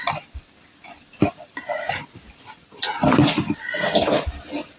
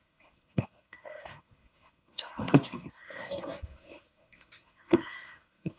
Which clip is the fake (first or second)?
second